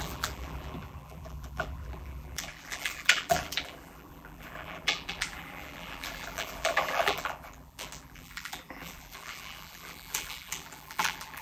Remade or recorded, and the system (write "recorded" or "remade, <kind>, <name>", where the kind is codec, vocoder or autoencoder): remade, vocoder, BigVGAN v2